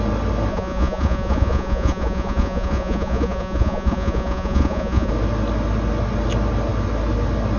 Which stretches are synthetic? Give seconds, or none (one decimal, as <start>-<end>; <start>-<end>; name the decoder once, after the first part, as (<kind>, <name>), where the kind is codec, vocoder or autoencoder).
0.5-5.1 (vocoder, Vocos)